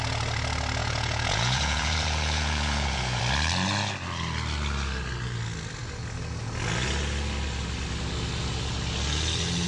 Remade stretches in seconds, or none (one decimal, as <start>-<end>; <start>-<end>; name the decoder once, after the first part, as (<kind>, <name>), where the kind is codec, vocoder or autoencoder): 0.8-3.2 (vocoder, Vocos)